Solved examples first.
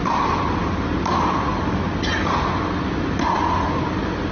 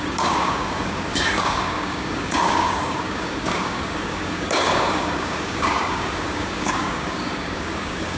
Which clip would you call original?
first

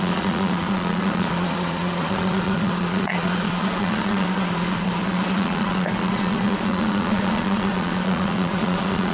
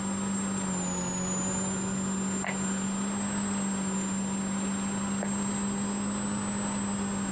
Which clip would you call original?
second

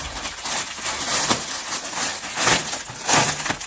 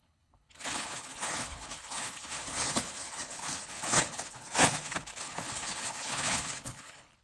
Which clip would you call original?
first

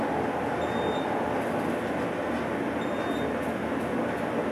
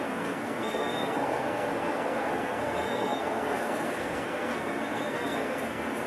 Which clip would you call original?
first